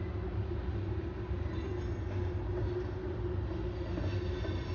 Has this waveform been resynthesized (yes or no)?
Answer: no